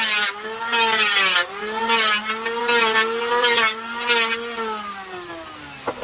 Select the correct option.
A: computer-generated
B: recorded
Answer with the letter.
B